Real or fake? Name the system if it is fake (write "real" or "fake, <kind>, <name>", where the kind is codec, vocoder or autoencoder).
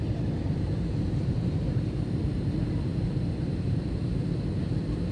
fake, vocoder, BigVGAN v2